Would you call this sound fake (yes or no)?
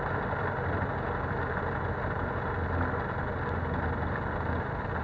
no